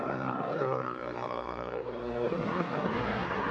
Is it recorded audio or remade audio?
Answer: remade